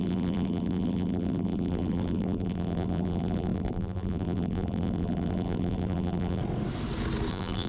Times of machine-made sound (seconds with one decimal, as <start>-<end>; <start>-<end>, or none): 0.0-6.4; 7.3-7.7